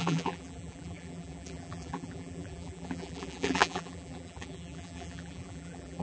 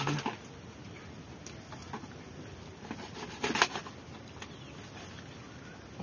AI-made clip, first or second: first